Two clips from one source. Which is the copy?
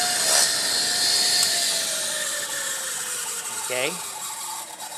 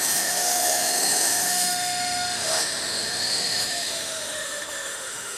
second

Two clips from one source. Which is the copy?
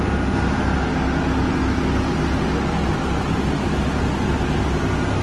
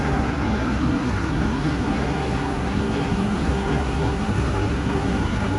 second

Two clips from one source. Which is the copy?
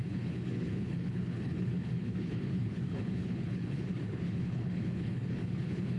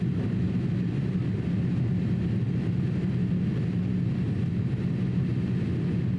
first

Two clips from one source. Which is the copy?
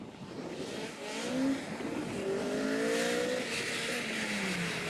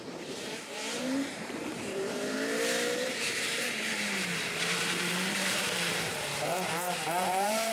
second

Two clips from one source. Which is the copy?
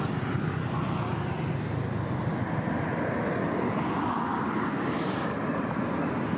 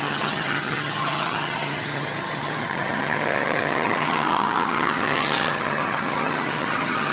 second